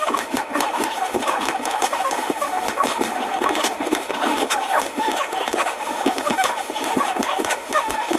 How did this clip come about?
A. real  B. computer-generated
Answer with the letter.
B